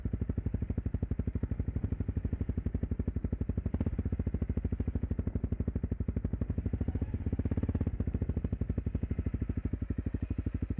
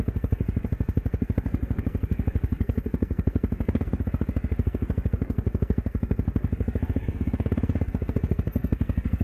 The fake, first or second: second